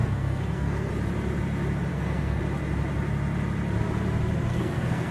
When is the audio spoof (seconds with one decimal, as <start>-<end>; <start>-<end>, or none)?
0.0-0.9; 1.9-2.4; 4.5-5.1